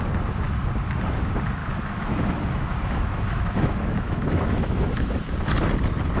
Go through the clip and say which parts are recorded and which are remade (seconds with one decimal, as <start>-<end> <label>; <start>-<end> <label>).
0.0-1.6 recorded; 1.6-5.1 remade; 5.1-6.2 recorded